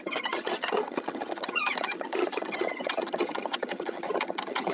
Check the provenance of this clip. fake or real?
fake